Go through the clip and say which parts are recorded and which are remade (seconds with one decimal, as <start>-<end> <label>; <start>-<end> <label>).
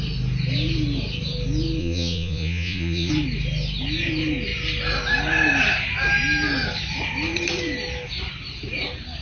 0.0-1.8 recorded; 1.8-3.1 remade; 3.1-9.2 recorded